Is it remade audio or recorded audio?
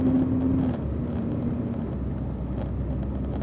recorded